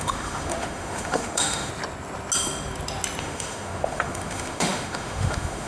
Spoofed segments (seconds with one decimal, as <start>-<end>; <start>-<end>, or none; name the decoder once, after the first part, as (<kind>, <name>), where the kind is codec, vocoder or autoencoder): 0.0-1.7 (autoencoder, DAC-VAE); 3.2-5.7